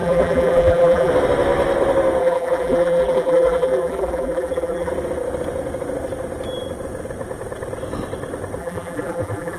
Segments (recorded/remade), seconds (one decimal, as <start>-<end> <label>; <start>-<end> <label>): 0.0-1.1 remade; 1.1-2.2 recorded; 2.2-4.9 remade; 4.9-8.6 recorded; 8.6-9.6 remade